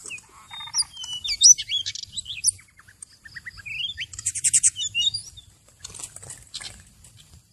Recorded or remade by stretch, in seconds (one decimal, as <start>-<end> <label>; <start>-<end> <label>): 0.0-7.5 recorded